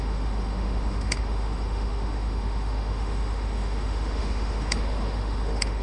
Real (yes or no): no